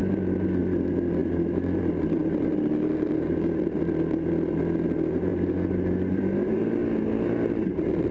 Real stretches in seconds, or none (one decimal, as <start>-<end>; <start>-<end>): 0.0-8.1